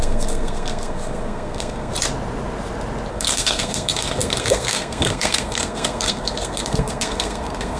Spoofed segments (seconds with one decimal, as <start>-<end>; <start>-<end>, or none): 0.0-1.9; 3.1-7.8